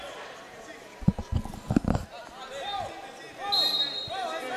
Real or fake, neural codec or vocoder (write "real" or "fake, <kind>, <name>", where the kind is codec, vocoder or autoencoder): real